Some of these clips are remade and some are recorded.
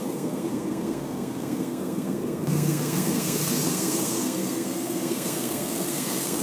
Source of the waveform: remade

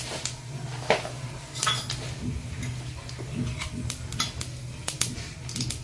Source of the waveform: recorded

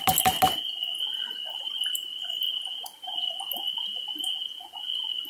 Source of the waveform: recorded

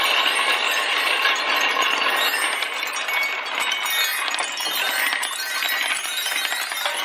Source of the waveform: recorded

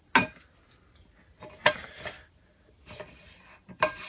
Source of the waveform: recorded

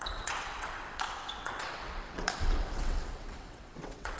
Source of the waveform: remade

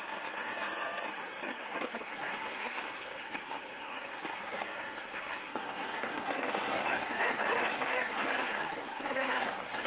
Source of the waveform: remade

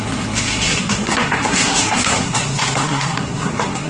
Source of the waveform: remade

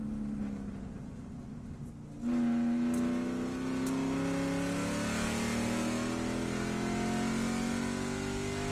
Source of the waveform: recorded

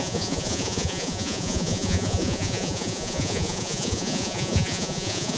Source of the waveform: remade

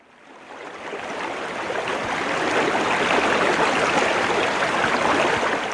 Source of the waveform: recorded